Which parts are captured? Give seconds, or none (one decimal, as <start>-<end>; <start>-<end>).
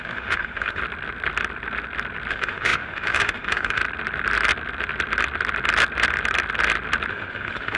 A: 0.8-2.3; 3.8-7.1